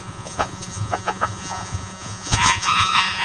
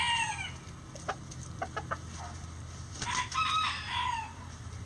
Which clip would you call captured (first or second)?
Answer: second